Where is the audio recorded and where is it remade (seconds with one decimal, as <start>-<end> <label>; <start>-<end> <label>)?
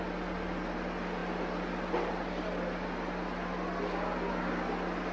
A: 0.0-5.1 recorded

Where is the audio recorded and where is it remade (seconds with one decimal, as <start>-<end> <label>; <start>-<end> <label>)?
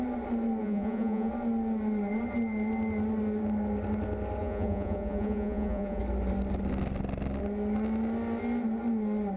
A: 0.0-0.6 recorded; 0.6-1.3 remade; 1.3-4.4 recorded; 4.4-6.0 remade; 6.0-9.4 recorded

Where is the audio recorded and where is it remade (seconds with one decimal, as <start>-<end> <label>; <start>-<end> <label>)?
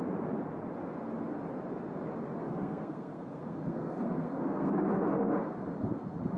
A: 0.0-2.4 recorded; 2.4-4.7 remade; 4.7-6.4 recorded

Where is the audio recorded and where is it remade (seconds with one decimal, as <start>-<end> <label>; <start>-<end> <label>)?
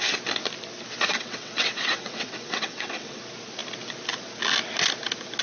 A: 0.0-1.1 recorded; 1.1-3.2 remade; 3.2-5.4 recorded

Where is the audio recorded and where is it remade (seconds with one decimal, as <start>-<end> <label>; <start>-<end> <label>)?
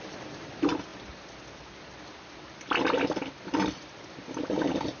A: 0.0-5.0 recorded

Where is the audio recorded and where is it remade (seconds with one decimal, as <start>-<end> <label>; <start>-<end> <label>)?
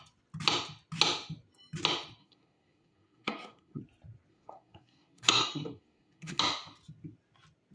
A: 0.0-2.2 recorded; 2.2-3.8 remade; 3.8-4.3 recorded; 4.3-6.4 remade; 6.4-7.7 recorded